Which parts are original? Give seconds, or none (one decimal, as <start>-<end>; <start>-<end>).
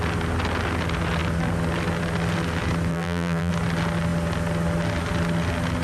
0.0-2.9; 3.5-5.8